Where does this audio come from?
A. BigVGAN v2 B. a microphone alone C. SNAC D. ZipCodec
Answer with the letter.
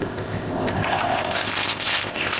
D